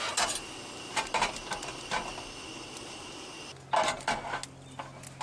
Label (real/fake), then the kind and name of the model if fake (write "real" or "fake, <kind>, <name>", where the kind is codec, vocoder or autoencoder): real